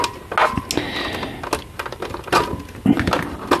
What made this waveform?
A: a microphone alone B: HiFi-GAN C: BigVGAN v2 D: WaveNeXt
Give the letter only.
A